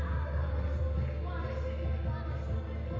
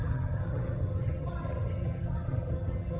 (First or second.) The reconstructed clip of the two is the second